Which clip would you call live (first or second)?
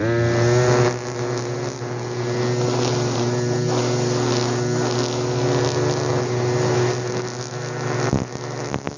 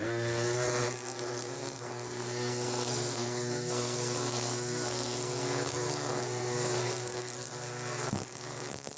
first